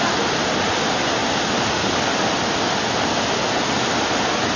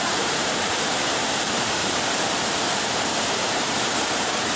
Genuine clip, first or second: first